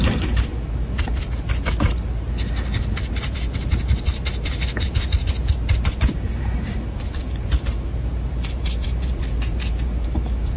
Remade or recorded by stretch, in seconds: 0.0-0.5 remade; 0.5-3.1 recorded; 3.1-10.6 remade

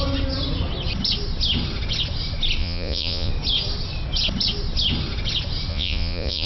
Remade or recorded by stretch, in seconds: 0.0-2.6 recorded; 2.6-3.3 remade; 3.3-5.7 recorded; 5.7-6.5 remade

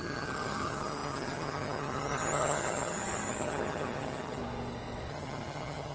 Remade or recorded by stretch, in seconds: 0.0-4.4 remade; 4.4-5.1 recorded; 5.1-5.9 remade

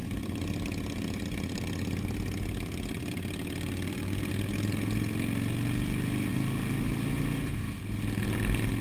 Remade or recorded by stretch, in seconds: 0.0-8.8 recorded

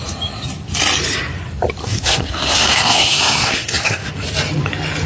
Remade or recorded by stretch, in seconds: 0.0-1.8 recorded; 1.8-4.1 remade; 4.1-5.1 recorded

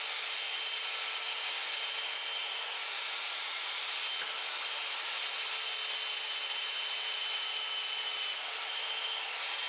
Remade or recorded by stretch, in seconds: 0.0-2.4 recorded; 2.4-3.8 remade; 3.8-9.7 recorded

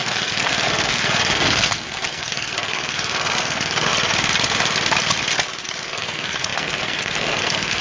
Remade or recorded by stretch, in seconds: 0.0-3.9 remade; 3.9-5.8 recorded; 5.8-7.8 remade

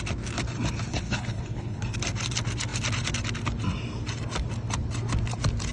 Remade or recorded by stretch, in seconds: 0.0-0.9 recorded; 0.9-1.8 remade; 1.8-5.7 recorded